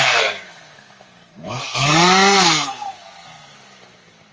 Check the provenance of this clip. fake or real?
fake